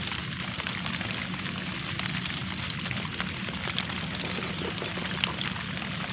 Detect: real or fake real